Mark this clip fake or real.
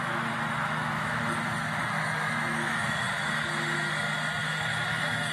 fake